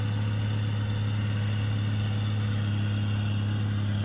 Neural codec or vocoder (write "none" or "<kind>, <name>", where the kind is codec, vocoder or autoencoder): none